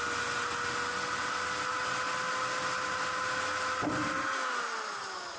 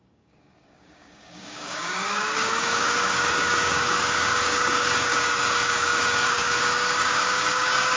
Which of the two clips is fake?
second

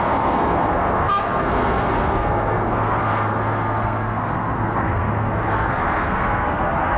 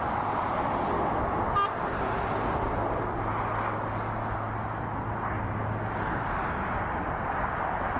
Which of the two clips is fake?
first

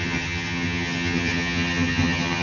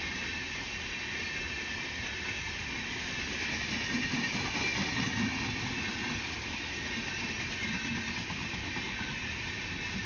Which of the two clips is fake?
first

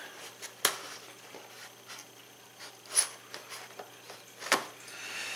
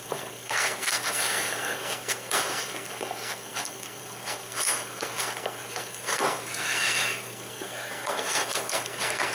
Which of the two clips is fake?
second